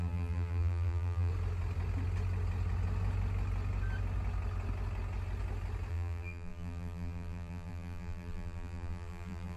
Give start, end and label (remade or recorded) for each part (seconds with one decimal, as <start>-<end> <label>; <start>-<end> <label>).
0.0-1.3 remade; 1.3-5.9 recorded; 5.9-9.6 remade